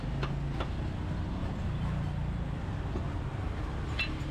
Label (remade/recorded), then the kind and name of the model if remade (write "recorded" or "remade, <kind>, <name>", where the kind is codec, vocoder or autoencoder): recorded